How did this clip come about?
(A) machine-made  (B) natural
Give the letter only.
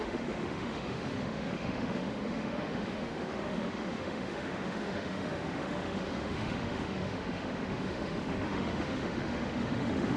A